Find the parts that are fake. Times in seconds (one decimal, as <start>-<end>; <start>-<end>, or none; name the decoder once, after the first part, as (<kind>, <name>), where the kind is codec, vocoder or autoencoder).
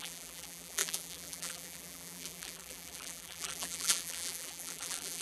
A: 0.0-5.2 (vocoder, BigVGAN v2)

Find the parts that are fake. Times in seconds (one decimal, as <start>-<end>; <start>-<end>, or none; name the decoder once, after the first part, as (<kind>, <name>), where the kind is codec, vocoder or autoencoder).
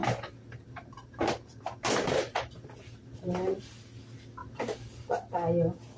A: 0.0-3.6 (vocoder, BigVGAN v2); 4.4-5.1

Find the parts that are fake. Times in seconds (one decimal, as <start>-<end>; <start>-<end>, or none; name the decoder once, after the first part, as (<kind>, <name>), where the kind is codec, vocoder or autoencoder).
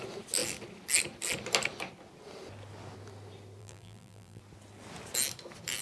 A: 3.6-4.4 (vocoder, BigVGAN v2)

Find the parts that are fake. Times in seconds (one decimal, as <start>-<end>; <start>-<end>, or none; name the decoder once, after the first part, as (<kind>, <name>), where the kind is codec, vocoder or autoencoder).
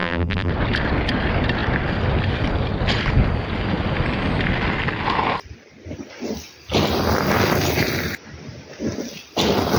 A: 0.0-0.5 (vocoder, BigVGAN v2)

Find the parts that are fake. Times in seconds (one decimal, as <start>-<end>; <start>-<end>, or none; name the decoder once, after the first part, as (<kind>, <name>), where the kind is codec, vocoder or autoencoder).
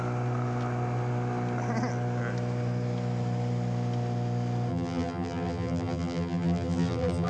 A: 4.7-7.3 (vocoder, BigVGAN v2)